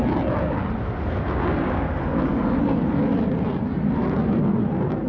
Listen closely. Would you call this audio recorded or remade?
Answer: recorded